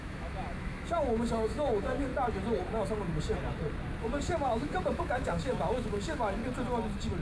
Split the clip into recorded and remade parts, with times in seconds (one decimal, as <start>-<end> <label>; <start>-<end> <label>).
0.0-2.1 remade; 2.1-4.0 recorded; 4.0-6.4 remade; 6.4-7.2 recorded